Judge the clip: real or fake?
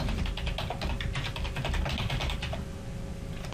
real